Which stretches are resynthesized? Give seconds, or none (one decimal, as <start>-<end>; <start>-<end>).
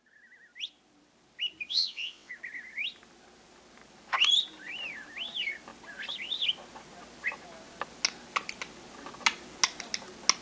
1.7-2.3